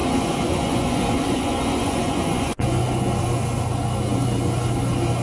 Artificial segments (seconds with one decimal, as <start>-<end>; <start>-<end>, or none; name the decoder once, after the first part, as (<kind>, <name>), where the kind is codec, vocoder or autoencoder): 0.0-3.1 (vocoder, Vocos)